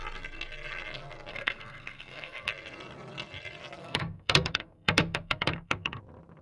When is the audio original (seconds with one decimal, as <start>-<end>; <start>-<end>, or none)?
0.0-1.3; 2.5-3.8; 6.0-6.4